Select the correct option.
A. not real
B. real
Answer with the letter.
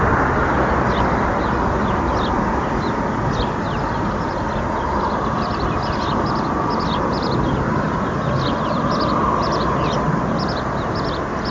B